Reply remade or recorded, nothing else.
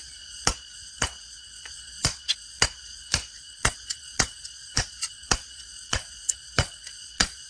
remade